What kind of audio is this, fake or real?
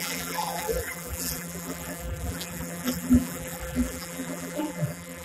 fake